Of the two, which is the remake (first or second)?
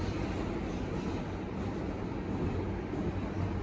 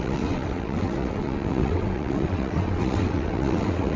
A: second